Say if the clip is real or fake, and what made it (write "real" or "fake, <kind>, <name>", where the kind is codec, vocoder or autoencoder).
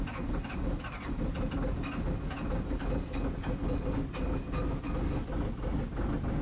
real